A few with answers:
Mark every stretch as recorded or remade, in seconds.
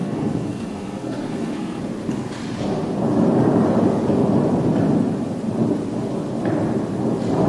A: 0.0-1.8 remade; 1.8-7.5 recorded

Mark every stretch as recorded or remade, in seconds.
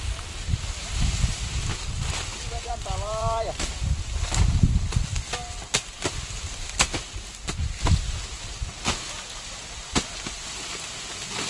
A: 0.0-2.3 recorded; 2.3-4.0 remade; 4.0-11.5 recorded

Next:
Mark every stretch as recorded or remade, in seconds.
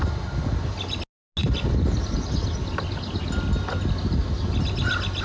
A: 0.0-5.2 recorded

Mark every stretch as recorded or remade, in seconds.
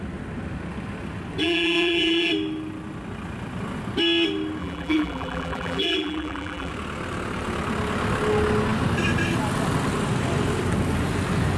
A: 0.0-1.4 recorded; 1.4-2.3 remade; 2.3-4.6 recorded; 4.6-6.7 remade; 6.7-11.6 recorded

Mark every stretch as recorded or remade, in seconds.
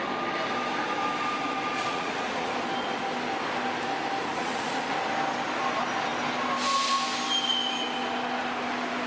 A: 0.0-1.9 recorded; 1.9-2.5 remade; 2.5-4.3 recorded; 4.3-5.0 remade; 5.0-9.1 recorded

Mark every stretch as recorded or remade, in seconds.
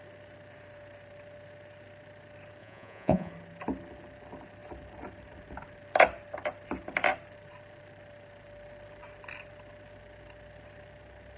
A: 0.0-2.6 recorded; 2.6-3.3 remade; 3.3-11.4 recorded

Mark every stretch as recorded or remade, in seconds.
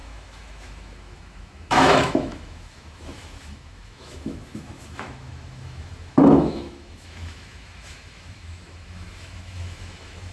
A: 0.0-10.3 remade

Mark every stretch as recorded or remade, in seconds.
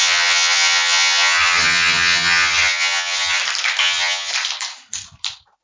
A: 0.0-3.4 remade; 3.4-3.8 recorded; 3.8-4.3 remade; 4.3-5.6 recorded